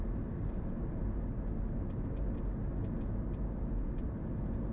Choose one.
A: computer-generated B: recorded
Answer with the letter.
B